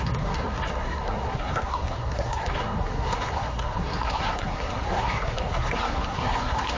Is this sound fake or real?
fake